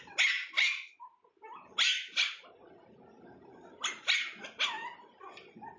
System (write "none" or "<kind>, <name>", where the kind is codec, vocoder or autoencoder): none